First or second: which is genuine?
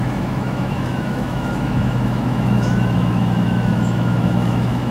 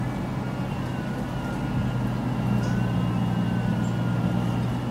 second